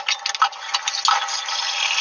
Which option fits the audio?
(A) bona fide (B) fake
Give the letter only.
A